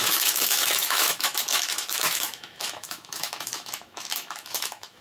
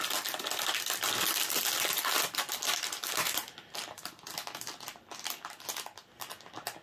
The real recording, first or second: second